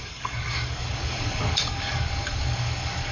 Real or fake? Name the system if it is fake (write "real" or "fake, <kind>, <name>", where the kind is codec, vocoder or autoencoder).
fake, codec, DAC